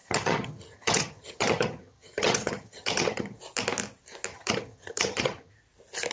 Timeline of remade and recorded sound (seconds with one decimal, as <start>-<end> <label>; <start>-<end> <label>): 0.0-3.4 remade; 3.4-4.3 recorded; 4.3-5.5 remade; 5.5-6.1 recorded